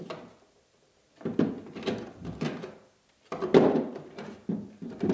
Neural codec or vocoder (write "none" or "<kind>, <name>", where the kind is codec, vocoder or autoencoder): none